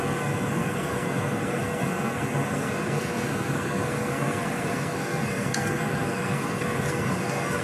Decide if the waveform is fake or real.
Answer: fake